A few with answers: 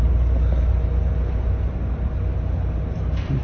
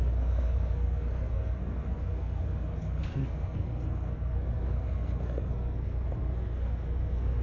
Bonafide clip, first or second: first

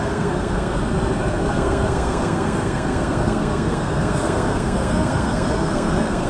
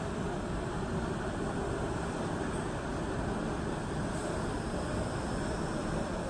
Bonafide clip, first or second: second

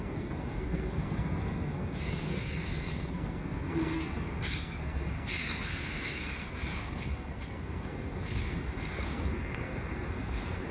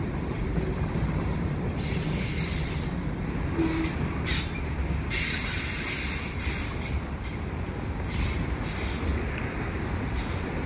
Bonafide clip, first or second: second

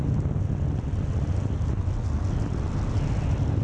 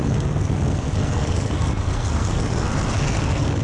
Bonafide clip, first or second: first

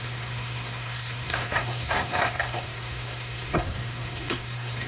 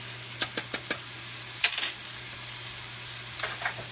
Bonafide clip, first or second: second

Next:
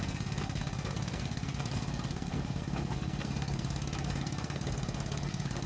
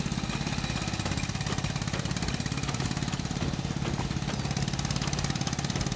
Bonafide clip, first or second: second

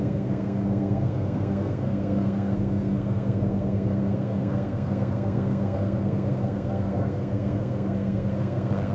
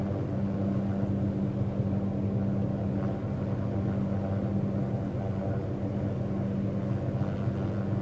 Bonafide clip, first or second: second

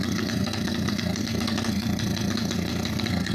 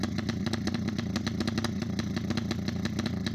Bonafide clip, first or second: second